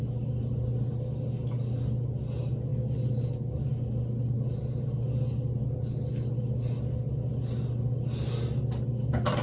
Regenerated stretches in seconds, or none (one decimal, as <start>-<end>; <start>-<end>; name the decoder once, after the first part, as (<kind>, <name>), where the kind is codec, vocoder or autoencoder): none